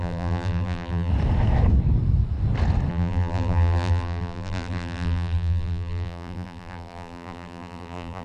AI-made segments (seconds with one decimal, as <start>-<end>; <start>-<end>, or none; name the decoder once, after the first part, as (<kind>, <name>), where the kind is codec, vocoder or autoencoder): 0.0-1.1 (vocoder, BigVGAN v2); 2.9-8.2